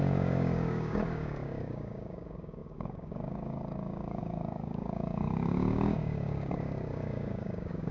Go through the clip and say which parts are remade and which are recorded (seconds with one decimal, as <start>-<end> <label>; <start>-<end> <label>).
0.0-7.9 remade

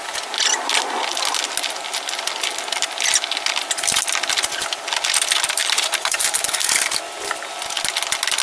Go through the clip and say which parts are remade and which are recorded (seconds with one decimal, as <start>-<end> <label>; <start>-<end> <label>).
0.0-5.6 recorded; 5.6-6.8 remade; 6.8-8.4 recorded

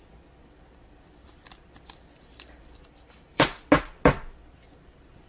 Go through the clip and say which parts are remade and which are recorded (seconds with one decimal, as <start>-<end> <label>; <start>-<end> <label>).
0.0-0.4 recorded; 0.4-3.6 remade; 3.6-5.3 recorded